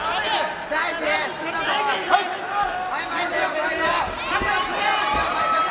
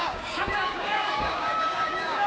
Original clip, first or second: first